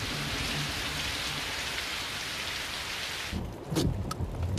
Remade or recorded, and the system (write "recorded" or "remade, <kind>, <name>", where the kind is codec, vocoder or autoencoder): recorded